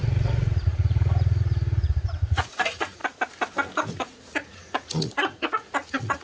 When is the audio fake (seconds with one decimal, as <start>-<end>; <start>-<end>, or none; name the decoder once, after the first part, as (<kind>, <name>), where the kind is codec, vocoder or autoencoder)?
0.0-3.0 (vocoder, Vocos); 3.9-6.2